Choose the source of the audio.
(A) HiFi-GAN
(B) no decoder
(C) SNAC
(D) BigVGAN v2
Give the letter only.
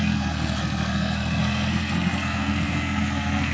C